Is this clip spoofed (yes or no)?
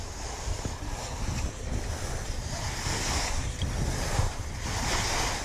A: no